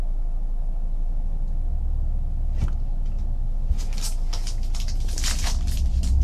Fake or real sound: real